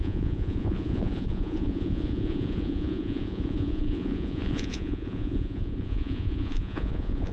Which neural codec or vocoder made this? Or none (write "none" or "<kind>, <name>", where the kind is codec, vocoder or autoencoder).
vocoder, Vocos